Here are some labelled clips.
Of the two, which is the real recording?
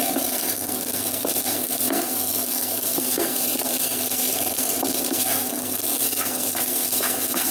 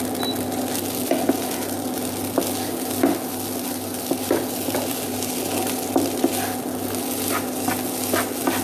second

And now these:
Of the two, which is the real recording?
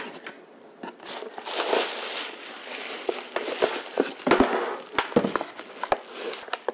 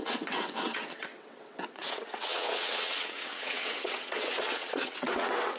first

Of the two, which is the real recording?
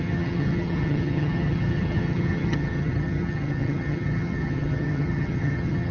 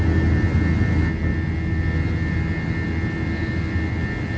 second